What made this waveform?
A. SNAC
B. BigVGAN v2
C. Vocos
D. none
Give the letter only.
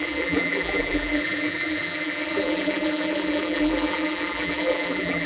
B